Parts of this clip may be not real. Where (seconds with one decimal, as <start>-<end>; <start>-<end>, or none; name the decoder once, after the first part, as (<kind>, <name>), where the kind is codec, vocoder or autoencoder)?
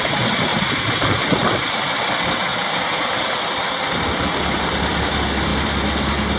none